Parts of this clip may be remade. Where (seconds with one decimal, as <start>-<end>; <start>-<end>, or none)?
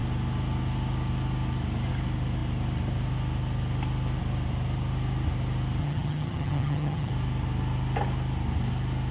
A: 5.8-7.1